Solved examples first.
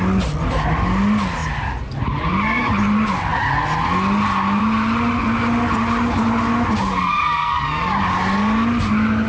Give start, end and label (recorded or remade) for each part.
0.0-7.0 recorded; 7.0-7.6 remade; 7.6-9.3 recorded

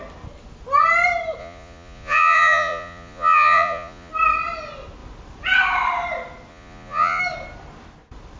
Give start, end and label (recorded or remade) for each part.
0.0-1.4 recorded; 1.4-4.1 remade; 4.1-6.5 recorded; 6.5-7.2 remade; 7.2-8.4 recorded

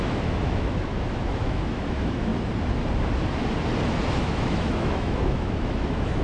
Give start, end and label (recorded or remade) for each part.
0.0-2.3 remade; 2.3-4.2 recorded; 4.2-6.2 remade

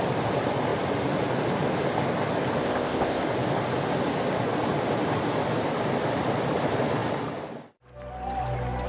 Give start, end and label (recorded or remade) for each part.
0.0-2.6 recorded; 2.6-3.2 remade; 3.2-8.9 recorded

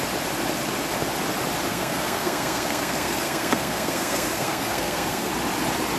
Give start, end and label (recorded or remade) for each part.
0.0-1.7 recorded; 1.7-5.3 remade; 5.3-6.0 recorded

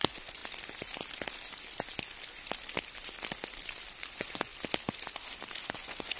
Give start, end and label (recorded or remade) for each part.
0.0-0.4 remade; 0.4-4.1 recorded; 4.1-4.5 remade; 4.5-5.6 recorded; 5.6-6.2 remade